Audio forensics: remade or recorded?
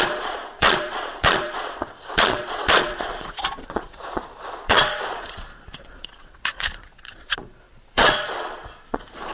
remade